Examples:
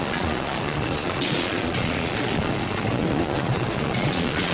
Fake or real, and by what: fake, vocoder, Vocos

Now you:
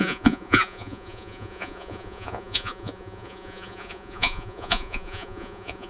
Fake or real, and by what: fake, vocoder, Vocos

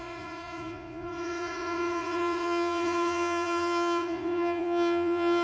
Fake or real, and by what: fake, vocoder, Vocos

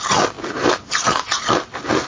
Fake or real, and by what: real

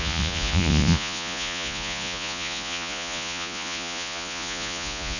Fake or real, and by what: fake, vocoder, Vocos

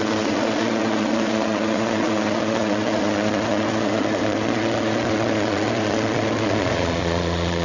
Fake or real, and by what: fake, vocoder, Vocos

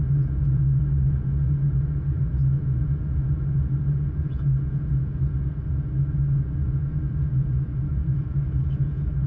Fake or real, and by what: fake, vocoder, Vocos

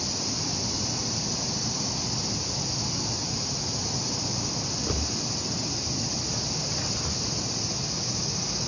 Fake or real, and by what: real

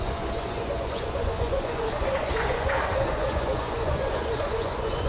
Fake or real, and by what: fake, vocoder, Vocos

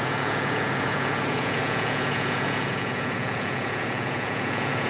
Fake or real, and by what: fake, vocoder, Vocos